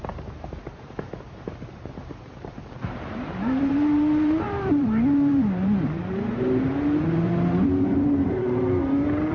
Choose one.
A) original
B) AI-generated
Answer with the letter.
B